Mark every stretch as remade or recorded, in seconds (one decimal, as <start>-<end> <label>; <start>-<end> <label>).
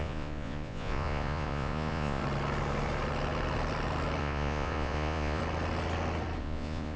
0.0-2.2 remade; 2.2-4.2 recorded; 4.2-5.4 remade; 5.4-6.4 recorded; 6.4-7.0 remade